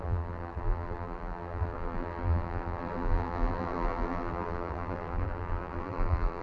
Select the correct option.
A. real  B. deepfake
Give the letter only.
B